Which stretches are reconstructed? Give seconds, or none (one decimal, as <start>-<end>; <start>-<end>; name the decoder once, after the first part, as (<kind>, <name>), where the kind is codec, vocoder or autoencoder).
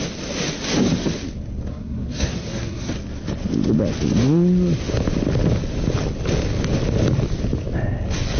1.7-2.9 (codec, SNAC)